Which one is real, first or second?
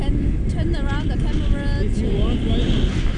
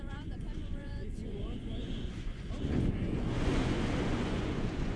first